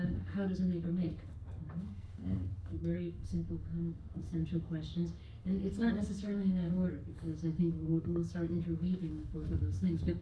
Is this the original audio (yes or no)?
no